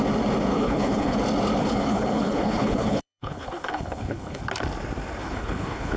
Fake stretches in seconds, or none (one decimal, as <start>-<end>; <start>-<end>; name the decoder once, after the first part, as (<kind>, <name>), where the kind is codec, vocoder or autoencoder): 0.5-1.2 (codec, HILCodec); 1.6-4.4; 5.2-6.0